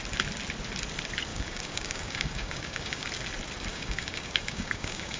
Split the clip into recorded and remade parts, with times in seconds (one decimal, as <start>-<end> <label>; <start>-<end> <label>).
0.0-1.3 recorded; 1.3-3.1 remade; 3.1-3.7 recorded; 3.7-5.2 remade